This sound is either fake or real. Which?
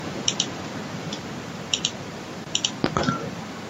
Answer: real